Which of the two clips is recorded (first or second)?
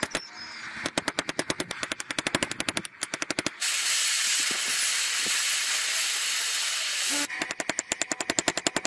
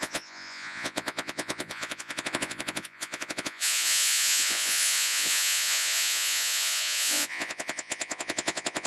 first